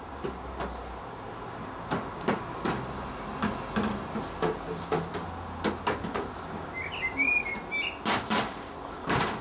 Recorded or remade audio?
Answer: recorded